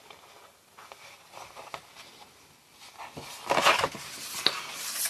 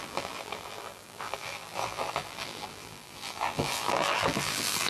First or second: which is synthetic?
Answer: second